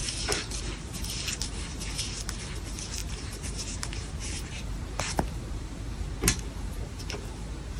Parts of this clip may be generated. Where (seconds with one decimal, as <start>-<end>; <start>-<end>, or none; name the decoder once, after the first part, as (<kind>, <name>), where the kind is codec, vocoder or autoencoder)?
3.0-7.8 (vocoder, BigVGAN v2)